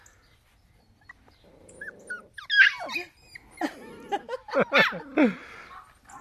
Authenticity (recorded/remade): recorded